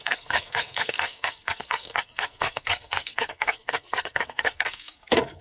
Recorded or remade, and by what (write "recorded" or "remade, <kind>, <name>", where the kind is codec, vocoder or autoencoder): remade, codec, SNAC